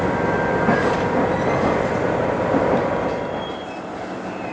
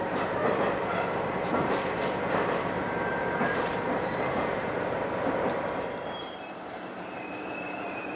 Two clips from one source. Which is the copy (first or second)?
second